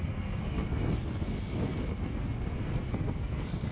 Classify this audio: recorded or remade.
remade